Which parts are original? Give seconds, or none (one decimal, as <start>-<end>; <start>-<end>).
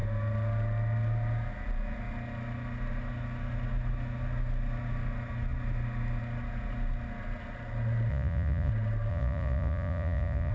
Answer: 0.0-8.1; 8.7-9.1